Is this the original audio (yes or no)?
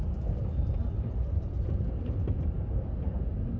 yes